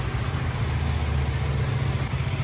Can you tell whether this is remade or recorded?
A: recorded